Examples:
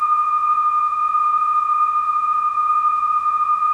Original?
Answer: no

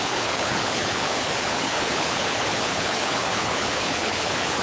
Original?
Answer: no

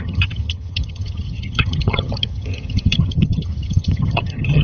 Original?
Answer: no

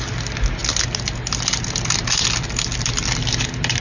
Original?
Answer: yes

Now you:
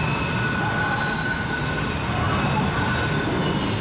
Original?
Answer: yes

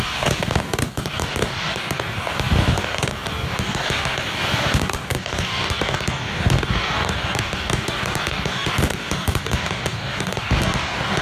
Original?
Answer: no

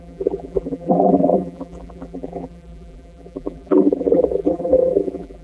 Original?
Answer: no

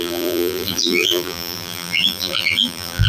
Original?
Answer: no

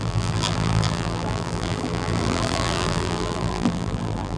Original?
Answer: no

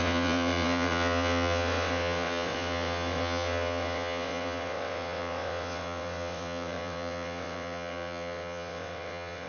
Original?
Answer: no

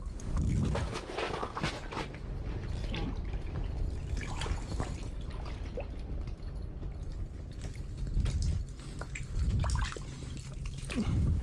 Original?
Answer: yes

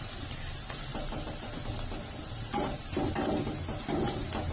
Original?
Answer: yes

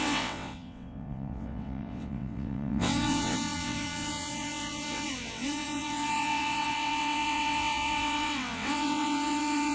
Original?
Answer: no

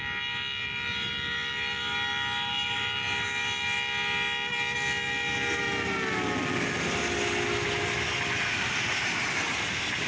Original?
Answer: yes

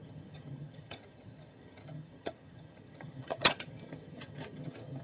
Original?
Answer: no